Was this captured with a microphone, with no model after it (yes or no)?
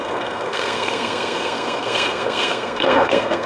no